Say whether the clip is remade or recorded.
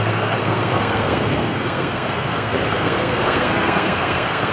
remade